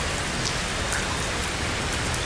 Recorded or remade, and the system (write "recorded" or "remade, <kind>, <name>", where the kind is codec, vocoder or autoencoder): recorded